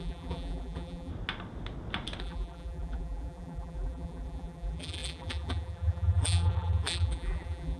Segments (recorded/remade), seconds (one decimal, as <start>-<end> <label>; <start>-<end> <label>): 0.0-1.1 remade; 1.1-2.2 recorded; 2.2-7.8 remade